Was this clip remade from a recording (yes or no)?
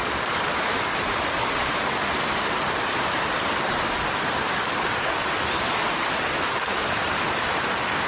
no